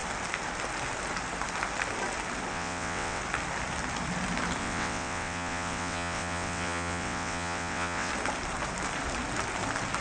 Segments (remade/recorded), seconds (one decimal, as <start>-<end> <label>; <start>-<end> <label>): 0.0-2.5 recorded; 2.5-3.2 remade; 3.2-4.6 recorded; 4.6-8.1 remade; 8.1-10.0 recorded